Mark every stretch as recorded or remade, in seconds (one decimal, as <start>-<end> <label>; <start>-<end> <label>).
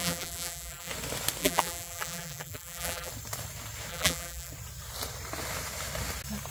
0.0-0.9 remade; 0.9-1.4 recorded; 1.4-3.1 remade; 3.1-3.9 recorded; 3.9-4.5 remade; 4.5-6.5 recorded